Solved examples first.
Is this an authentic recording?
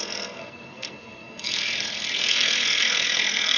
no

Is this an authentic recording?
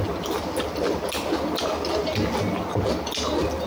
yes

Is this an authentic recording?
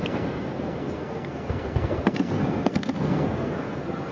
no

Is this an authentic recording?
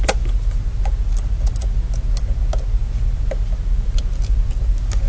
yes